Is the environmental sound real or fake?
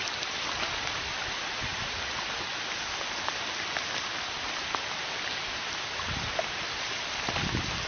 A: real